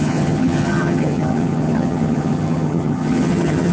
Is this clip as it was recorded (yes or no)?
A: no